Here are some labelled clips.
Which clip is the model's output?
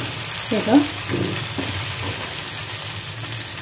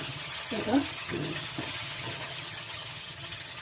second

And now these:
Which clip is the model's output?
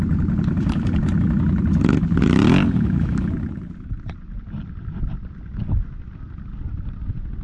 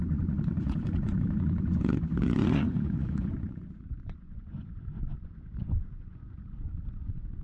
second